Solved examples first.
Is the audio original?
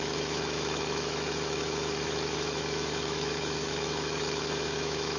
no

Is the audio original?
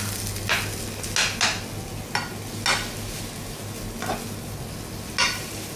yes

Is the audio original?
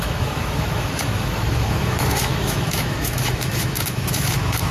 no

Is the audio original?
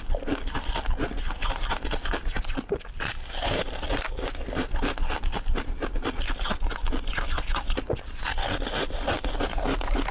yes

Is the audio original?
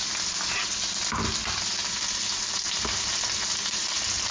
yes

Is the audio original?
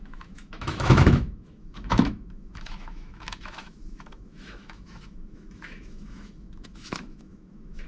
no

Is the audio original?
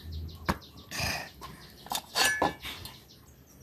yes